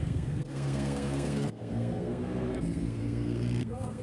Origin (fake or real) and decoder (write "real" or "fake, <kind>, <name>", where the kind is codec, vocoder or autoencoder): fake, codec, SNAC